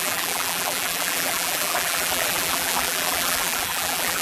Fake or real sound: fake